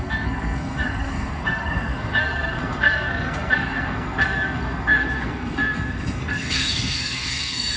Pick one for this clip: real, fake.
fake